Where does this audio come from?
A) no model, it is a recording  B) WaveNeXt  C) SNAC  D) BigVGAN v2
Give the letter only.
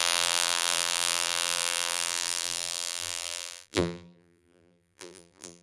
D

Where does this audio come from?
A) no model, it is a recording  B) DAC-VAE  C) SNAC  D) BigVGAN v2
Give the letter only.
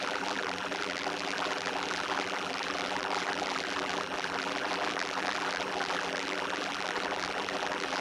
D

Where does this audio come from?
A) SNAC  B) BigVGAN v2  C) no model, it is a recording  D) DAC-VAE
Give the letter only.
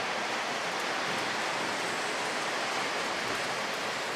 C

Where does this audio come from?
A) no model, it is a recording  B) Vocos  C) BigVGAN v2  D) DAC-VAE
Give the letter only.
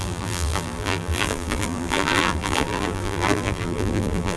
C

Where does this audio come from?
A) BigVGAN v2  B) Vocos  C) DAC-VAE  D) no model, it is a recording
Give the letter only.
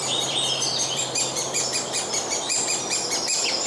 A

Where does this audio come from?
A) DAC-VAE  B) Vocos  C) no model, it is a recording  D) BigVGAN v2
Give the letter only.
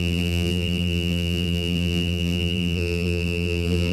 D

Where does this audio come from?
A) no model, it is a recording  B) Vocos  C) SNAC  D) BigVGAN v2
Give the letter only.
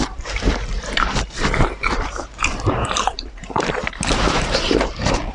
D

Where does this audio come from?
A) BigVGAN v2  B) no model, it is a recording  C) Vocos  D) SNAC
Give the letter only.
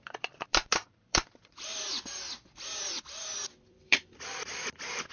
A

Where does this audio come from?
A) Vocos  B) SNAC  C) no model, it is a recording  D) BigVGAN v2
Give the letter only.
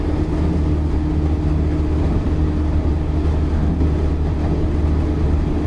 C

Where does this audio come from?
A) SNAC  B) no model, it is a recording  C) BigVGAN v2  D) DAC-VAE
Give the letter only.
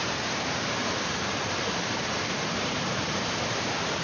C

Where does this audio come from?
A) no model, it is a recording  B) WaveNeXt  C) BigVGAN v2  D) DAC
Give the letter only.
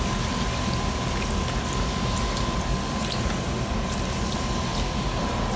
A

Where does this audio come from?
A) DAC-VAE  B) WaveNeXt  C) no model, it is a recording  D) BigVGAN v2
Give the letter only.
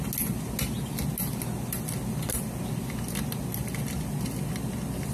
C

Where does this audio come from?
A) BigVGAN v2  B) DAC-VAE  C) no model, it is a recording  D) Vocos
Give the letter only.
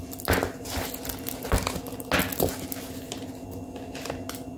C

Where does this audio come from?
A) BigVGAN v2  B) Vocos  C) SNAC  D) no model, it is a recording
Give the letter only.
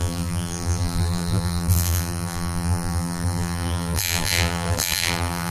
A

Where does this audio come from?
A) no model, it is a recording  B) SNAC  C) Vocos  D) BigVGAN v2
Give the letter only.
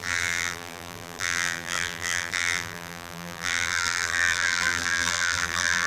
D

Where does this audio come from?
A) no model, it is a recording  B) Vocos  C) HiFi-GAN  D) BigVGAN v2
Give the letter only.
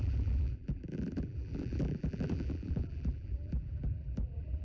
D